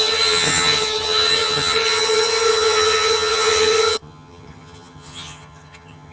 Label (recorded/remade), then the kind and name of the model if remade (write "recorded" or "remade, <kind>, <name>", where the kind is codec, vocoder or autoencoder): remade, vocoder, HiFi-GAN